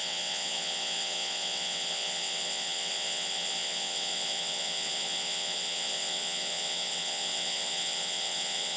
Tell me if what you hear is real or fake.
fake